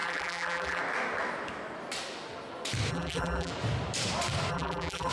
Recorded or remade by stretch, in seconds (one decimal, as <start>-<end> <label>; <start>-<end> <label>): 0.0-0.8 remade; 0.8-2.9 recorded; 2.9-3.5 remade; 3.5-4.5 recorded; 4.5-5.1 remade